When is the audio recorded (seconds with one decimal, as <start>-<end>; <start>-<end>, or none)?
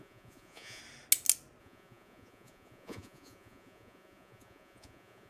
0.8-1.6